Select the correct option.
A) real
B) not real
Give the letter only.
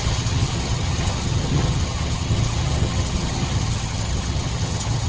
B